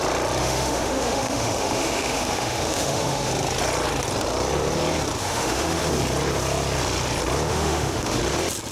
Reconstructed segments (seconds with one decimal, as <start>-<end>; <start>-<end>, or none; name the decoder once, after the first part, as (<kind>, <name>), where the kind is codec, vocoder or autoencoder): 0.4-3.3 (autoencoder, DAC-VAE); 5.2-5.8; 7.5-8.2